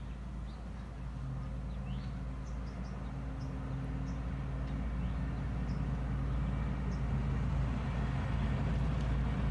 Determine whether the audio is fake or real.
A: real